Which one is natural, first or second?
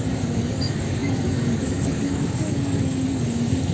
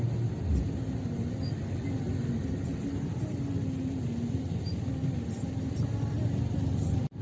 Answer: second